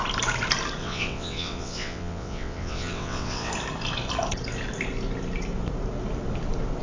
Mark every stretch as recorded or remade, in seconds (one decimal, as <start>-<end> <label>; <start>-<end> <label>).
0.0-0.8 recorded; 0.8-3.5 remade; 3.5-6.8 recorded